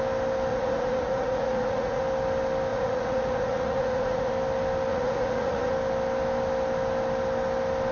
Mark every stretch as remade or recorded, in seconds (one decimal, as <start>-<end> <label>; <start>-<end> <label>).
0.0-0.5 recorded; 0.5-2.0 remade; 2.0-2.7 recorded; 2.7-4.3 remade; 4.3-4.9 recorded; 4.9-5.7 remade; 5.7-7.9 recorded